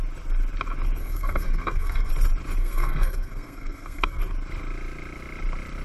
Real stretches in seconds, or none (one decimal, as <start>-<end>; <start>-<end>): 0.0-1.0; 2.1-2.6; 4.2-5.8